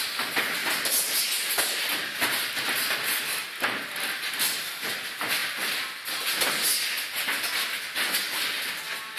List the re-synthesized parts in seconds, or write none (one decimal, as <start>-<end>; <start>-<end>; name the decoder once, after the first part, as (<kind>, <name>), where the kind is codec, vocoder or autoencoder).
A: none